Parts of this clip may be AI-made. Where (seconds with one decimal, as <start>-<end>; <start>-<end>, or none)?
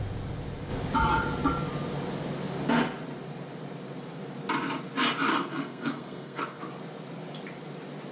5.3-6.6